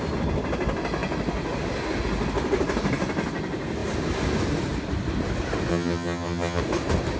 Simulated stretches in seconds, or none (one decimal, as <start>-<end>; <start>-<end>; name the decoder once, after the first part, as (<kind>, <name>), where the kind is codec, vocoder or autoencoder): 5.7-6.6 (vocoder, HiFi-GAN)